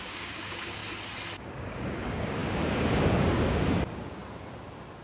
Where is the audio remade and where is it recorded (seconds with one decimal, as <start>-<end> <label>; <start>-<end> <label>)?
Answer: 0.0-0.8 remade; 0.8-1.4 recorded; 1.4-4.2 remade; 4.2-5.0 recorded